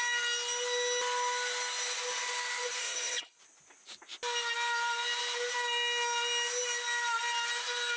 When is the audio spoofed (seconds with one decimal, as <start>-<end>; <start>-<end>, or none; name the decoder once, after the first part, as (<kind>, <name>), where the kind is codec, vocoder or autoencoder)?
2.8-3.4 (codec, HILCodec)